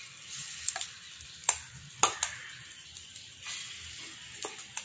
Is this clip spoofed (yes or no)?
no